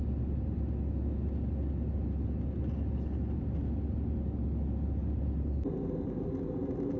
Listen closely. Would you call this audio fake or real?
real